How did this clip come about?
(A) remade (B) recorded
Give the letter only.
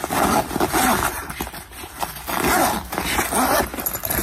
B